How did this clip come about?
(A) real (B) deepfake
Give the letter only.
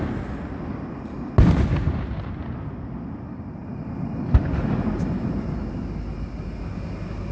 A